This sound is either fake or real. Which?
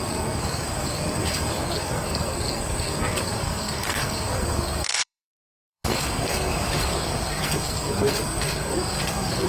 fake